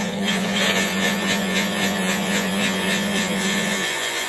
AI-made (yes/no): yes